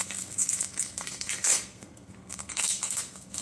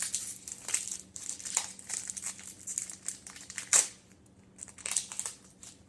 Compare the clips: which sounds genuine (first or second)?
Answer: second